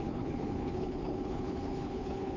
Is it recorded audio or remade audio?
remade